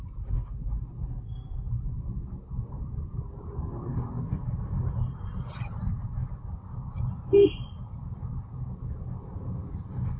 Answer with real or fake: real